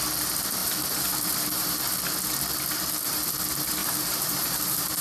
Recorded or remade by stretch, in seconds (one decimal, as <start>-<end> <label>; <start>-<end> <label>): 0.0-0.6 recorded; 0.6-2.0 remade; 2.0-3.8 recorded; 3.8-5.0 remade